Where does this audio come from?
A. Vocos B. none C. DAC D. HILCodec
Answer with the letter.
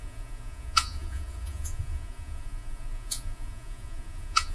A